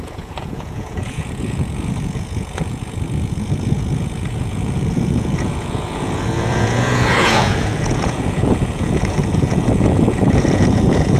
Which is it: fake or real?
fake